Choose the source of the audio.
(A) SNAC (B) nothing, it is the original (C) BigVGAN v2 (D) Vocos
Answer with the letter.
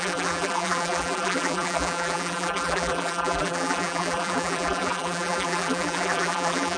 C